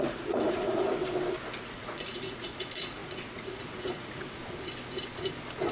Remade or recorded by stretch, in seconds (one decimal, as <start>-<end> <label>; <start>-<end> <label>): 0.0-1.0 remade; 1.0-1.6 recorded; 1.6-4.4 remade; 4.4-5.7 recorded